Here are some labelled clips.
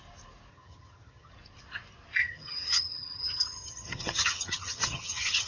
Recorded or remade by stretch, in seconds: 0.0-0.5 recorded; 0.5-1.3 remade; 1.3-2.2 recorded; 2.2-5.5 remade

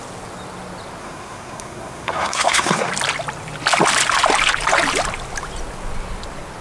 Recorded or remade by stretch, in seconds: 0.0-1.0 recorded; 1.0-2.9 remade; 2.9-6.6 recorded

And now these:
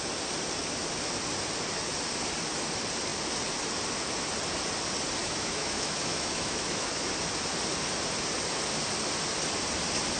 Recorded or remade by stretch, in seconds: 0.0-5.2 recorded; 5.2-6.9 remade; 6.9-10.2 recorded

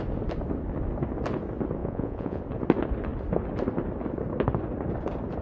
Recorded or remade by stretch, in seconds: 0.0-1.8 recorded; 1.8-2.4 remade; 2.4-5.4 recorded